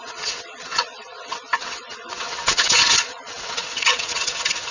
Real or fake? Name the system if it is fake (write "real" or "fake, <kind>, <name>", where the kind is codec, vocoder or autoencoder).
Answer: fake, vocoder, WaveNeXt